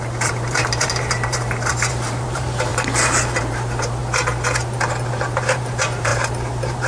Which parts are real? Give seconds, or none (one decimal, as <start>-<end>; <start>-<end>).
2.7-3.4; 4.0-5.1